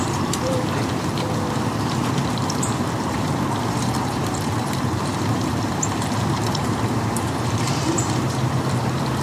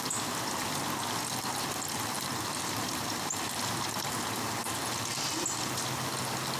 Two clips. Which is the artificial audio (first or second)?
first